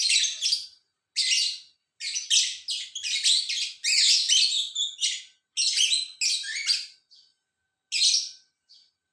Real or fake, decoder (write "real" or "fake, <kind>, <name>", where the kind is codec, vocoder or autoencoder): real